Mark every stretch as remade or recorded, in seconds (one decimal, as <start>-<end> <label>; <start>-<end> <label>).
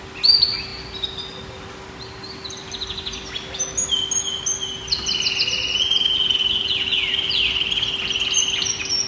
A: 0.0-9.1 recorded